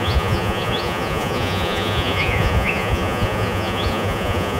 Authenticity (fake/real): fake